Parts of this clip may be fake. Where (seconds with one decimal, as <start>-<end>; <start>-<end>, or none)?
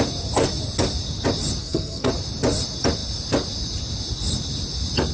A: 1.6-2.1